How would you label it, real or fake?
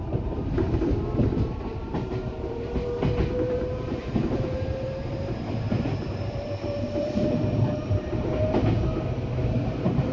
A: fake